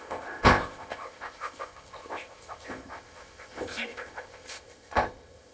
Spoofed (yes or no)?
yes